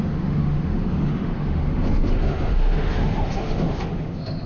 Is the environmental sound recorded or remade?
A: remade